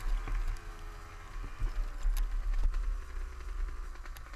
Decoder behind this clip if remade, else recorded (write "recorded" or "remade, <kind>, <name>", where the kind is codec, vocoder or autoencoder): recorded